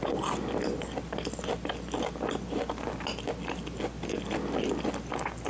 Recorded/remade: recorded